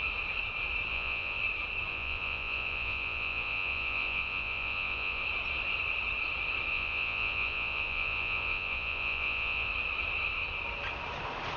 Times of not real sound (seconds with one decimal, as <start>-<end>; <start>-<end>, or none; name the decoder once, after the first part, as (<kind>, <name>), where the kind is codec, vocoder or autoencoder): 0.9-1.4 (vocoder, Vocos); 1.9-5.2; 6.7-9.7